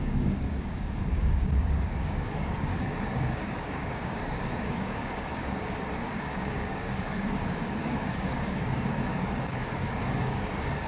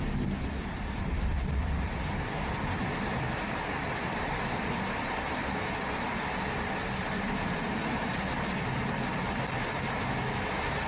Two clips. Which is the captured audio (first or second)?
second